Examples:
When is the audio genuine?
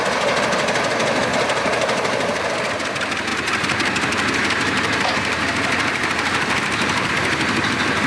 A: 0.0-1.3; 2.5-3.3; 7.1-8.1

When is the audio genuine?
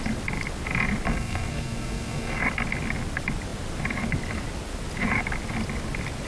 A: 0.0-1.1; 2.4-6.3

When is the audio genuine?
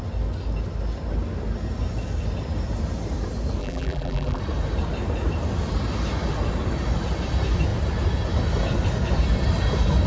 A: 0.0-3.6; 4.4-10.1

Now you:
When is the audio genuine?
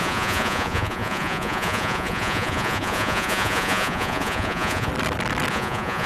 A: 4.9-5.5